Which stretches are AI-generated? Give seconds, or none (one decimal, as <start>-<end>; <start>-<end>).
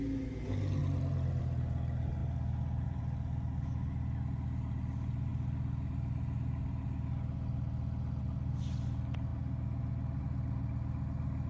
0.8-1.4; 2.2-3.0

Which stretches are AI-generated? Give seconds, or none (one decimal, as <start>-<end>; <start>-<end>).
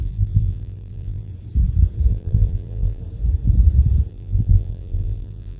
0.0-1.3; 2.1-3.0; 4.1-5.6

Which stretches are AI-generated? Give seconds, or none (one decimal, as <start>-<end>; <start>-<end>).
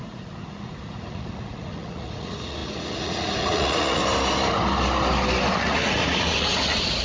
0.0-4.0; 5.5-7.0